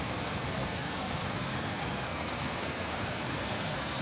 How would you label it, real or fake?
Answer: fake